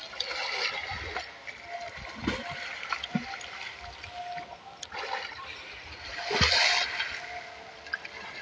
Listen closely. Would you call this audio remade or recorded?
recorded